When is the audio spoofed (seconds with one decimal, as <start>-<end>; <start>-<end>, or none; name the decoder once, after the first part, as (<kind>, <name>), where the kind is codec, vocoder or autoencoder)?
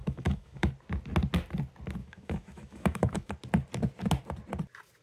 0.0-0.7 (autoencoder, DAC-VAE); 2.0-3.3